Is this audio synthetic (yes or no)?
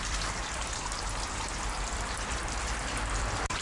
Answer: yes